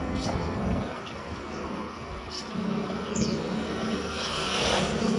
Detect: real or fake fake